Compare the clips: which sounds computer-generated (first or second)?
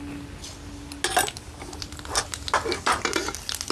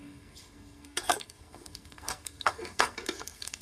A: second